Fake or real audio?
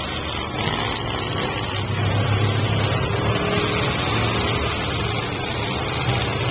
real